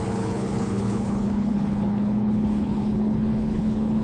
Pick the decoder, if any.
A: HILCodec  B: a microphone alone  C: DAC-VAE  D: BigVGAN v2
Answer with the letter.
A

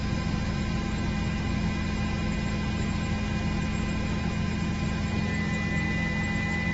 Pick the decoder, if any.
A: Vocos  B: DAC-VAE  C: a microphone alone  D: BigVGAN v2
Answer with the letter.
C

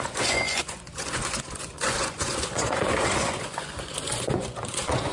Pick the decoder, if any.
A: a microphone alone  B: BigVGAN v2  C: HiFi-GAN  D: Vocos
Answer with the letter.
D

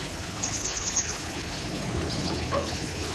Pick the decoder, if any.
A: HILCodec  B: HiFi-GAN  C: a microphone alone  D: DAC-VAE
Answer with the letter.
A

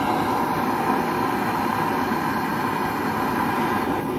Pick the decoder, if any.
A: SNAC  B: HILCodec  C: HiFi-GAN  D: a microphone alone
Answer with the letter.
D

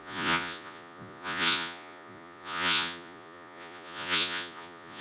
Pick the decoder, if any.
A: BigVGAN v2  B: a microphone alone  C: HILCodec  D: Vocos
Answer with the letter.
D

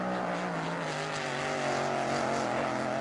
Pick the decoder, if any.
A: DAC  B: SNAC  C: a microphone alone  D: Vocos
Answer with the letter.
C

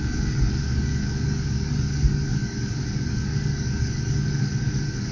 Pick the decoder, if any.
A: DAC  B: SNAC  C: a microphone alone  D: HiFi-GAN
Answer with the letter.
A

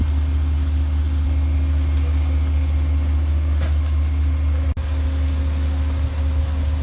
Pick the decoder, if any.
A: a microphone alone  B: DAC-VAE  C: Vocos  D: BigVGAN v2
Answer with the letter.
A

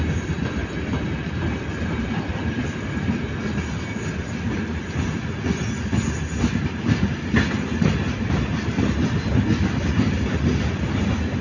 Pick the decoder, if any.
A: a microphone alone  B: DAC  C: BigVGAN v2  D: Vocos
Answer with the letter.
A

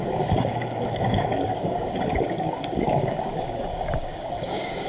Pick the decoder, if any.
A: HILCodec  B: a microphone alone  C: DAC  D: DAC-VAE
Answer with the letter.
C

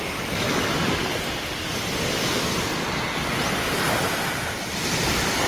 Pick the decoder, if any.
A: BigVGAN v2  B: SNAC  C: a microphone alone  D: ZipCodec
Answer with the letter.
C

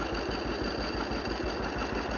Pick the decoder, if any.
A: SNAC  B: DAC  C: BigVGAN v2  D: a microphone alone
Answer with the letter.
D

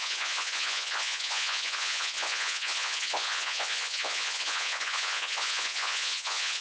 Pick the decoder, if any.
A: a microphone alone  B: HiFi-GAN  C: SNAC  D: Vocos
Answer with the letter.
D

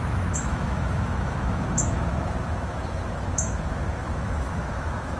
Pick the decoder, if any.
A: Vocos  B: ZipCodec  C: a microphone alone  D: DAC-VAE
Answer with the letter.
D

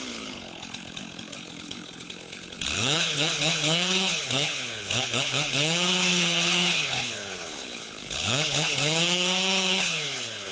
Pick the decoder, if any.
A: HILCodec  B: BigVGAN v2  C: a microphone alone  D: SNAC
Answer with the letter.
A